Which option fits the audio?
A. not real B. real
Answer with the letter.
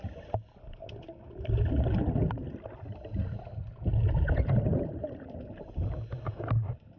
B